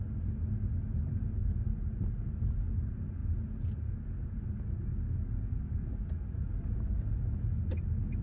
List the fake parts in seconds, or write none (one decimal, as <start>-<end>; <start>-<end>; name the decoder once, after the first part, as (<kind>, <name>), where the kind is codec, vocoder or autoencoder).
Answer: 1.4-2.1 (vocoder, BigVGAN v2)